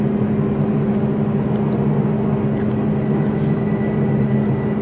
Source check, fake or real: real